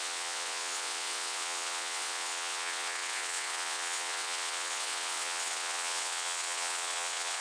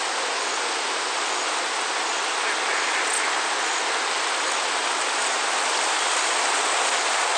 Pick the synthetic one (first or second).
first